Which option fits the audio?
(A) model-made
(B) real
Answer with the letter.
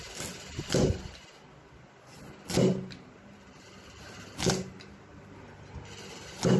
B